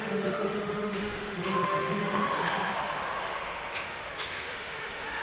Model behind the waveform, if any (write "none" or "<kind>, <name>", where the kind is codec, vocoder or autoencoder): autoencoder, DAC-VAE